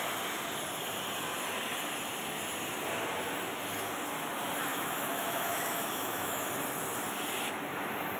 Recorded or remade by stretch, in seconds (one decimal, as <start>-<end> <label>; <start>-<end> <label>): 0.0-4.7 recorded; 4.7-6.5 remade; 6.5-8.2 recorded